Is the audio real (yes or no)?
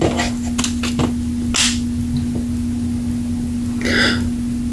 yes